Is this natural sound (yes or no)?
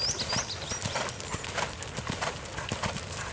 yes